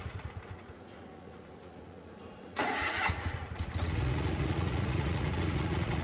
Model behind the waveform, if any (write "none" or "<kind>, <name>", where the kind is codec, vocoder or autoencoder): vocoder, Vocos